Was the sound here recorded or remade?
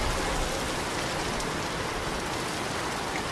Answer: recorded